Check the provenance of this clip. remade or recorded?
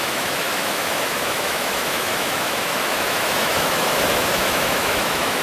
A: remade